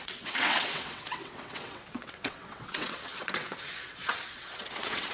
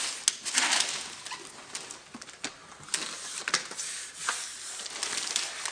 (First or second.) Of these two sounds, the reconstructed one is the first